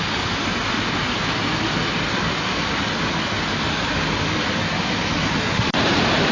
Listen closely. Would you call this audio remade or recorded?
recorded